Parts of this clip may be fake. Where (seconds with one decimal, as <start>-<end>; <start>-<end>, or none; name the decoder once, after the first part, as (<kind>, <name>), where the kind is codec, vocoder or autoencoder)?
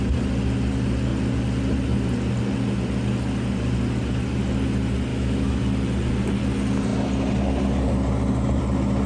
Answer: 5.1-5.6 (autoencoder, DAC-VAE)